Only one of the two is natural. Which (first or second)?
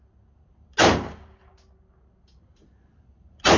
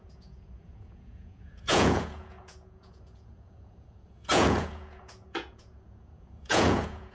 first